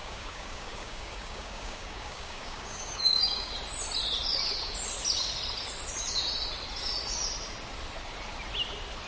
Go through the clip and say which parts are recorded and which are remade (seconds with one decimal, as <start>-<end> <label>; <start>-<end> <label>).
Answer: 0.0-3.5 remade; 3.5-9.1 recorded